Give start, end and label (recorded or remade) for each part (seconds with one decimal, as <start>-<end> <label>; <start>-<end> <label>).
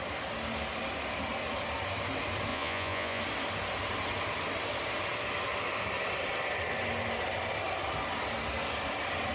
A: 0.0-2.5 recorded; 2.5-3.2 remade; 3.2-9.3 recorded